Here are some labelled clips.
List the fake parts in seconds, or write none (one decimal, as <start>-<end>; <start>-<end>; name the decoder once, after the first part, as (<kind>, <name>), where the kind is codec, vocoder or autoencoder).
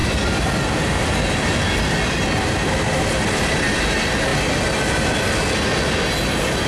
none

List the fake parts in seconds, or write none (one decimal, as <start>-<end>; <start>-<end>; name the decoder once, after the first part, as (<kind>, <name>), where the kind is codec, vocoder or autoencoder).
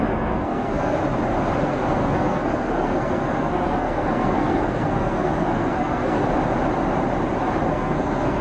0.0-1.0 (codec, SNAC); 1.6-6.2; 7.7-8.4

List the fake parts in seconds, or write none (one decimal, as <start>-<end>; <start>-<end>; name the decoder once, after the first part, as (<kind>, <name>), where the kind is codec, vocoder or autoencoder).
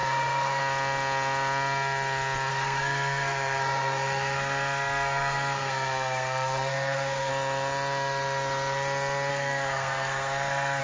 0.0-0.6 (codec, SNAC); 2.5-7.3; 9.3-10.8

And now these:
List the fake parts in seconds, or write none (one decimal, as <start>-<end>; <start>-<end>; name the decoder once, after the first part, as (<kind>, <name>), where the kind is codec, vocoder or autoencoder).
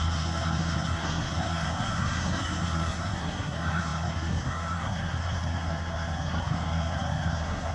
0.0-7.7 (codec, SNAC)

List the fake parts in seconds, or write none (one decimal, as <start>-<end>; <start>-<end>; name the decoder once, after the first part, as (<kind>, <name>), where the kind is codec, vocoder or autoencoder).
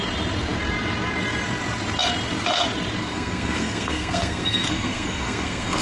3.0-5.8 (codec, SNAC)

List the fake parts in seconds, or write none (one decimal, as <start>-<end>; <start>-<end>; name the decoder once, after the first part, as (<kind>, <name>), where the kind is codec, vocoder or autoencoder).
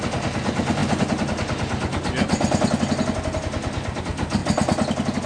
none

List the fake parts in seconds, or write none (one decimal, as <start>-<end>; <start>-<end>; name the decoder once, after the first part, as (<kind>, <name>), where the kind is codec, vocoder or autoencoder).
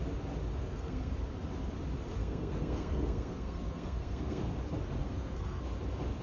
0.6-1.1 (codec, SNAC); 2.2-4.5; 5.0-5.6